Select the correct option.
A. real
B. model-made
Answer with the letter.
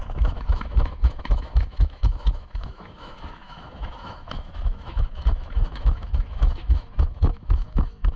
B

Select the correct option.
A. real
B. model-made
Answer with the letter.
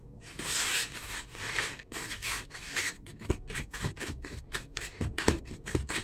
B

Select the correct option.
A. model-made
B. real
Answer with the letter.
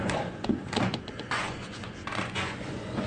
A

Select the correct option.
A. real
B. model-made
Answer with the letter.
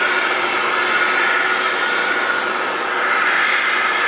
A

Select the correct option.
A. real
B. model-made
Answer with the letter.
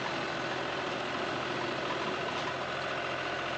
A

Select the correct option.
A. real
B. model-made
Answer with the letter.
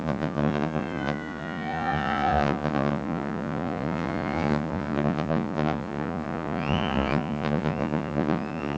B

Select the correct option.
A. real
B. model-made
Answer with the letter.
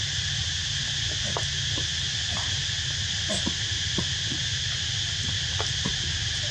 A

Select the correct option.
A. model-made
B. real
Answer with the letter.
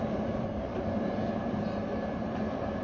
A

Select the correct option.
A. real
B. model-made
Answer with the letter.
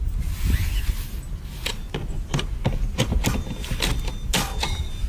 A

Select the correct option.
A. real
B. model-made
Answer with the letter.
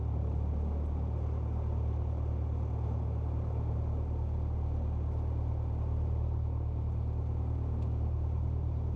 A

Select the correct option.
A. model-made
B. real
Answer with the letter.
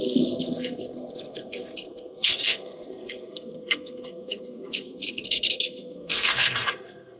A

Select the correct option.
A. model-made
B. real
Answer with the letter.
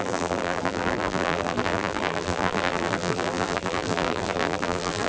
A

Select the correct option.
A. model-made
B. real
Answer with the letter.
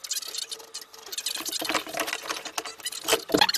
B